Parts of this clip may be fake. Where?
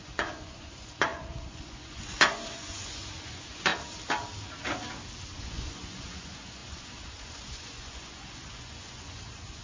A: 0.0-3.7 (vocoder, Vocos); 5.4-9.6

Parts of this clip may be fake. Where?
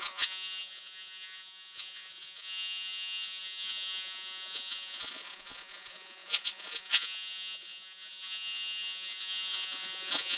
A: 0.0-10.4 (vocoder, Vocos)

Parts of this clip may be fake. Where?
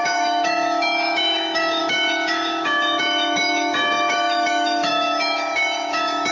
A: 0.0-6.3 (autoencoder, DAC-VAE)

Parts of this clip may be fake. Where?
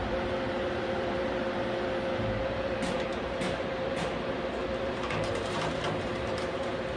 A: 0.0-7.0 (vocoder, BigVGAN v2)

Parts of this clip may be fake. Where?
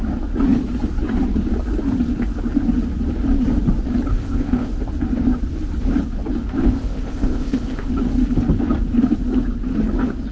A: 4.1-4.7 (codec, ZipCodec); 6.6-7.9